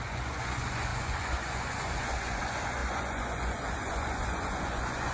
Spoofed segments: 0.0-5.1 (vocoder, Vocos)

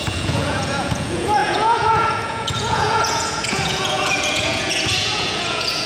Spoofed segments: 0.0-5.9 (vocoder, Vocos)

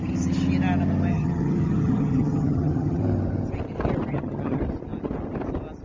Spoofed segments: 1.1-3.0 (vocoder, HiFi-GAN); 4.1-4.6

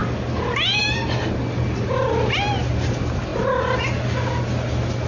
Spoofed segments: none

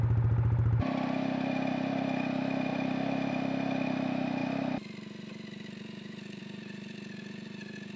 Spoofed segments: 2.7-3.3 (vocoder, BigVGAN v2); 4.4-6.4

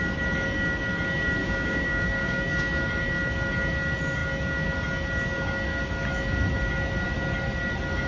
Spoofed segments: 1.4-2.5 (codec, DAC)